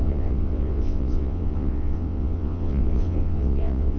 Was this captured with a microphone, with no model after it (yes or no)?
no